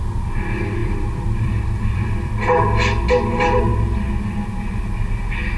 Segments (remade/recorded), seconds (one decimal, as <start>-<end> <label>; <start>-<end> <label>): 0.0-0.8 recorded; 0.8-2.3 remade; 2.3-5.6 recorded